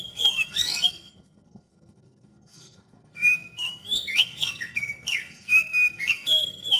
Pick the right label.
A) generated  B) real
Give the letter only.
A